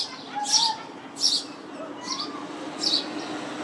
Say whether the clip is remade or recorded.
recorded